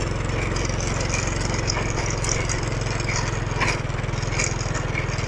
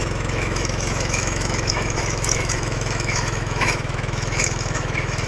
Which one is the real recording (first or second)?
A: first